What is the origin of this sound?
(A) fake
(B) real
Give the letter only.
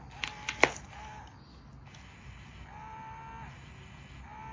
B